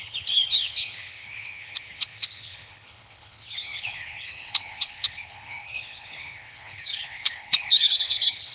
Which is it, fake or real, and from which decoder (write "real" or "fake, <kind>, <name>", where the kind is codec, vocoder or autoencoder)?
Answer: fake, codec, HILCodec